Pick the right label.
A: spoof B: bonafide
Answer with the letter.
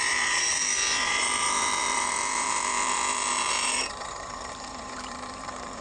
A